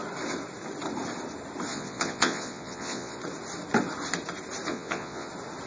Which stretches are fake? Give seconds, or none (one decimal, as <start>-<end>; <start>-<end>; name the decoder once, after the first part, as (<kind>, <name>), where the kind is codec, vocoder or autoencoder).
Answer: 1.7-3.2 (vocoder, Vocos); 4.7-5.3